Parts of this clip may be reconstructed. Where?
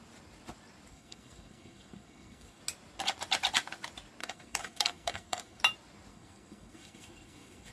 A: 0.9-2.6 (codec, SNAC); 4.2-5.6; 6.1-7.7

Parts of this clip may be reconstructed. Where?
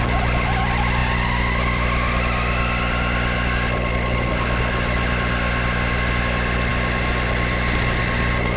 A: none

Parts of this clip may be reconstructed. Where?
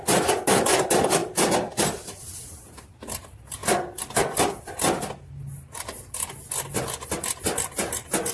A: none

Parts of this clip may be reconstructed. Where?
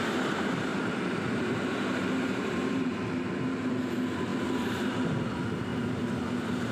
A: 0.7-1.6 (vocoder, BigVGAN v2); 4.3-5.3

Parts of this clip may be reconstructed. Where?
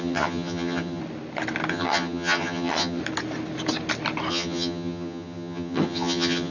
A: 0.0-1.0 (vocoder, HiFi-GAN); 1.7-3.0; 4.3-6.5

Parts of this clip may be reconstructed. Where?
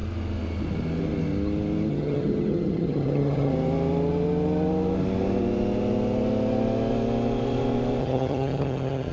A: 1.9-3.5 (vocoder, HiFi-GAN); 8.0-9.1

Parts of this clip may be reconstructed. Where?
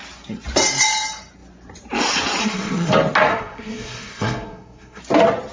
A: 2.4-2.9 (codec, SNAC); 3.3-5.0